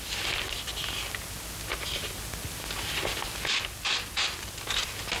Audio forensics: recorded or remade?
recorded